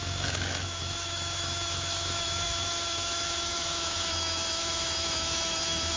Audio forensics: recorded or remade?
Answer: remade